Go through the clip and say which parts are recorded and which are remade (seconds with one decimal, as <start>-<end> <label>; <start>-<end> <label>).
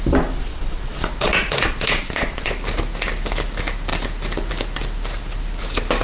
0.0-0.5 recorded; 0.5-2.5 remade; 2.5-6.0 recorded